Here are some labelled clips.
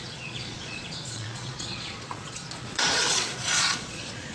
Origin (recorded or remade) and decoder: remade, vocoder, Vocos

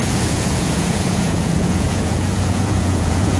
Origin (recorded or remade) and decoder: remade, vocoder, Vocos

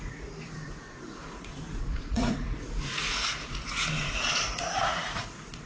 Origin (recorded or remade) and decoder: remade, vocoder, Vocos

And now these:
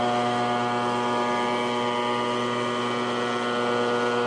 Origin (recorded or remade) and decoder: recorded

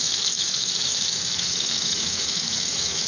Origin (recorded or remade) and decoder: remade, autoencoder, DAC-VAE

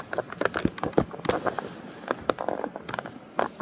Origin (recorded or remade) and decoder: recorded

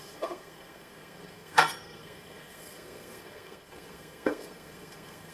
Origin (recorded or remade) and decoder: remade, codec, SNAC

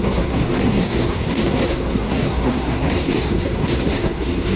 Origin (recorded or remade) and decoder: remade, codec, SNAC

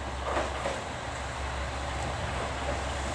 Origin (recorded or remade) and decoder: recorded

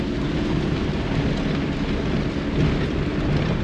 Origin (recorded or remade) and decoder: recorded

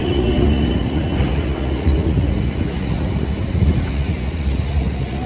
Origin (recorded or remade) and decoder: remade, vocoder, Vocos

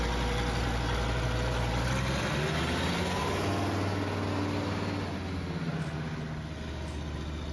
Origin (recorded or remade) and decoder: recorded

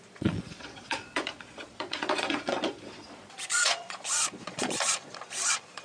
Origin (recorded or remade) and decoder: remade, vocoder, Vocos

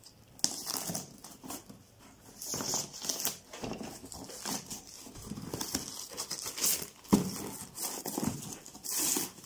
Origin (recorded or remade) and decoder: recorded